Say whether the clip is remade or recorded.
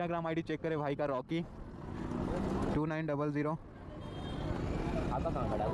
recorded